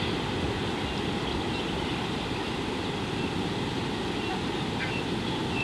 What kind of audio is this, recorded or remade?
recorded